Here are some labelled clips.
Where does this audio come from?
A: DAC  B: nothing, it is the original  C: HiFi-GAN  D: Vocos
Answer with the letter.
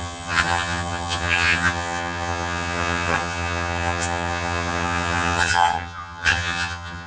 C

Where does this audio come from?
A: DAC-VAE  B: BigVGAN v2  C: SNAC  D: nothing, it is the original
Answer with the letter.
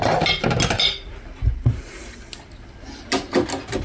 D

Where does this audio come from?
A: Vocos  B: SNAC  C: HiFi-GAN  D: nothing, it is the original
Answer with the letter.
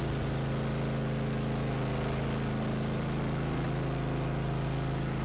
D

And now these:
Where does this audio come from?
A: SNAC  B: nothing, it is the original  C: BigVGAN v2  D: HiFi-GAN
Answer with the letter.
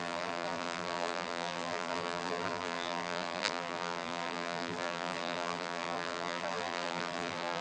C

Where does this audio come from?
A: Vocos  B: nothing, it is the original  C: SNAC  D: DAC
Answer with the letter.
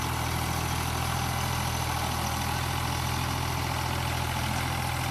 B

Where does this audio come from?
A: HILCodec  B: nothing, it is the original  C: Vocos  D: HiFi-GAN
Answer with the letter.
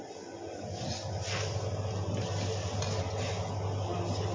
B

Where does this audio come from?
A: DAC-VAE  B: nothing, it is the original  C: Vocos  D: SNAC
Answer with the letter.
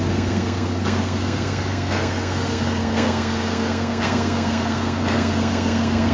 D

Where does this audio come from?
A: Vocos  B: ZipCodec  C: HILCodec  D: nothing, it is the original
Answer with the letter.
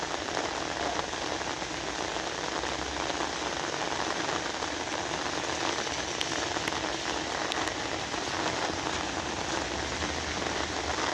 D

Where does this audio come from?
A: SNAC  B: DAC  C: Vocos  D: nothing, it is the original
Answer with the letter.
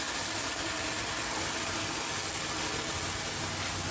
D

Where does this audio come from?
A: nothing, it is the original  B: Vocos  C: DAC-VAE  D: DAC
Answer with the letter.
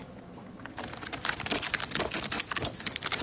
A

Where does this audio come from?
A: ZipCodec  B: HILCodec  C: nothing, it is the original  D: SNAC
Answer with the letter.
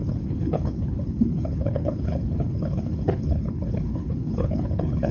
B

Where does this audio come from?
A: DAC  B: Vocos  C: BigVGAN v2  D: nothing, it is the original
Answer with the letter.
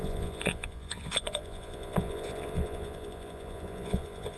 B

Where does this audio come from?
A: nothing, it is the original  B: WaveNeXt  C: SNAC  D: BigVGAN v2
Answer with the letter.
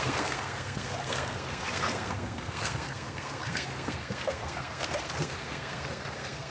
C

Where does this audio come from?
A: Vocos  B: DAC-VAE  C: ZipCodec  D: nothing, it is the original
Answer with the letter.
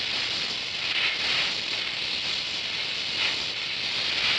D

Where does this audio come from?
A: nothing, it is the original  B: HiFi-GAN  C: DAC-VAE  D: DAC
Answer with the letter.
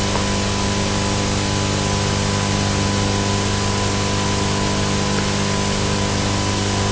A